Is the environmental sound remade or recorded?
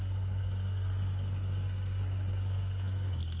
remade